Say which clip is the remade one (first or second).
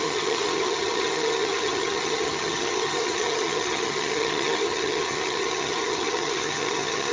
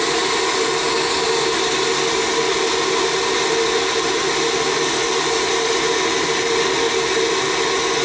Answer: first